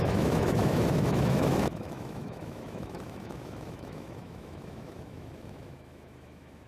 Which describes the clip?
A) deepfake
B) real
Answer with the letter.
A